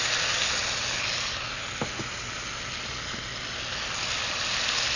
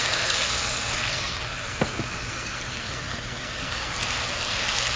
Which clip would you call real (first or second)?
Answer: first